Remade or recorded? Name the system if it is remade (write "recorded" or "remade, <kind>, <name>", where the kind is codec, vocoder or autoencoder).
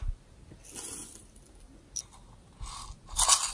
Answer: recorded